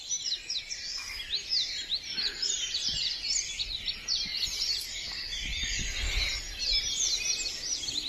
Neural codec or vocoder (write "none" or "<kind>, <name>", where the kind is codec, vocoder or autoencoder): none